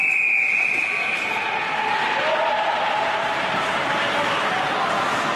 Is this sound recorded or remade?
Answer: recorded